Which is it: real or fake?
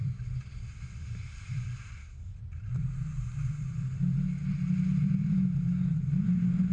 real